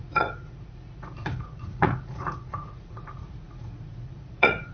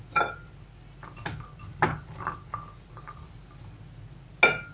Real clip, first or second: second